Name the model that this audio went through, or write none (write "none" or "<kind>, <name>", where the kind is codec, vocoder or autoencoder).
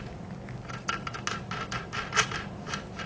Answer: none